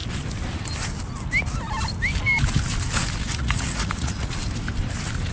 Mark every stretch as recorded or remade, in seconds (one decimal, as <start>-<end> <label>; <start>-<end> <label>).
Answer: 0.0-3.2 recorded; 3.2-4.4 remade; 4.4-5.3 recorded